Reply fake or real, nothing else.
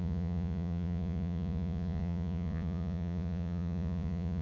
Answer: fake